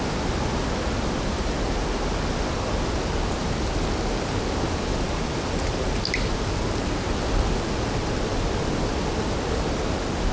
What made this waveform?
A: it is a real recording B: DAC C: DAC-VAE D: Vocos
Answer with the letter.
A